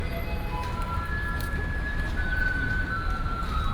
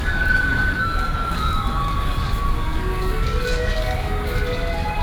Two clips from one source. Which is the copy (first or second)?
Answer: second